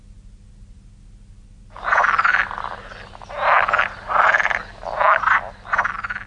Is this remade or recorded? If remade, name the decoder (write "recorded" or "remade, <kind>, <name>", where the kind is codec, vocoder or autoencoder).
recorded